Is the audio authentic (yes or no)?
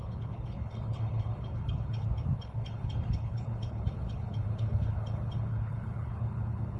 no